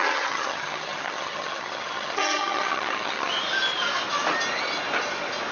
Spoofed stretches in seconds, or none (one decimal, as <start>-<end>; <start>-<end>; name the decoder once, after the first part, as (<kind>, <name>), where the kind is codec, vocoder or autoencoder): 0.0-3.3 (vocoder, HiFi-GAN)